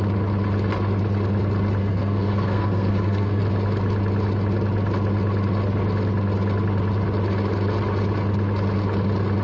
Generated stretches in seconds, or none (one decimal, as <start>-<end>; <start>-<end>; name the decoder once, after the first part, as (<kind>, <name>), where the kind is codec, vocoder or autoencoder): 1.8-3.4 (codec, SNAC)